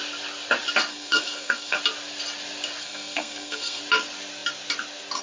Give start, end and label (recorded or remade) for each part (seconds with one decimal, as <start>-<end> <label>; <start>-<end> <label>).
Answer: 0.0-0.9 recorded; 0.9-1.8 remade; 1.8-2.8 recorded; 2.8-3.8 remade; 3.8-5.2 recorded